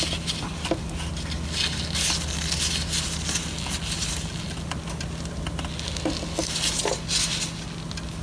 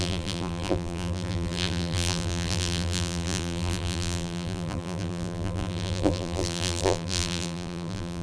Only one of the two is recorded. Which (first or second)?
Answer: first